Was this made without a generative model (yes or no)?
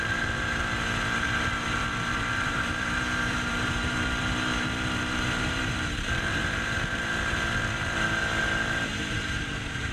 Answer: no